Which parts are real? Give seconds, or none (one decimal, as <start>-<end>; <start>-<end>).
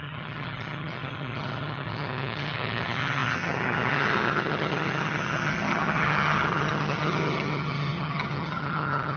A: none